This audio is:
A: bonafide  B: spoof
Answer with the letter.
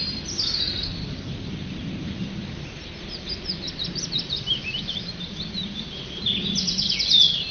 A